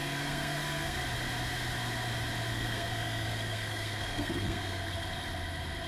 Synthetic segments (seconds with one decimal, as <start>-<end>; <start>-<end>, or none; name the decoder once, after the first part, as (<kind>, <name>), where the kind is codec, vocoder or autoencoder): 0.0-1.0 (codec, SNAC); 2.5-4.9